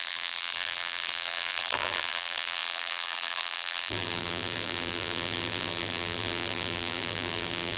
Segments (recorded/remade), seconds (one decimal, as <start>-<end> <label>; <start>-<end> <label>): 0.0-7.8 remade